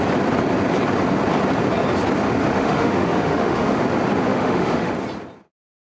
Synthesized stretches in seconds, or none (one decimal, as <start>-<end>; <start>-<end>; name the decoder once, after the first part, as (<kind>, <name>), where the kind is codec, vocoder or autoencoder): 2.5-3.8 (autoencoder, DAC-VAE); 4.3-4.9